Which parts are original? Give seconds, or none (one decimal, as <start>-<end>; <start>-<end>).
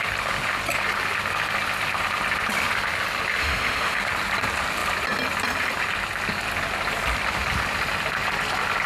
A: 0.0-3.4; 4.0-8.9